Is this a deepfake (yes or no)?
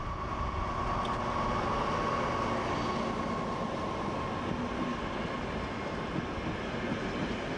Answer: no